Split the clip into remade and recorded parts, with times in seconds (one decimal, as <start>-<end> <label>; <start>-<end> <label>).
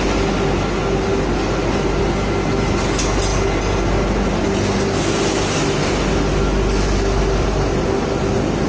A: 0.0-8.7 recorded